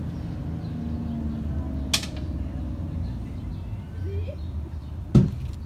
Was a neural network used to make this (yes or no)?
no